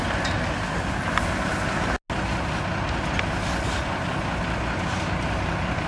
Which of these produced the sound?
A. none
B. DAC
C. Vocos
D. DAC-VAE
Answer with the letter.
A